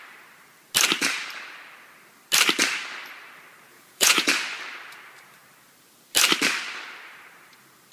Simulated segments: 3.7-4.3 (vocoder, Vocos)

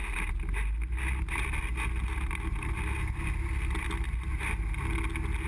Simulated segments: none

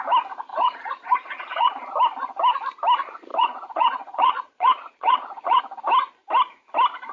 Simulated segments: 0.5-1.9 (vocoder, Vocos); 3.3-5.6

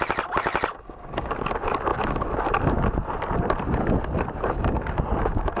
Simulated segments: 0.7-1.3 (codec, DAC)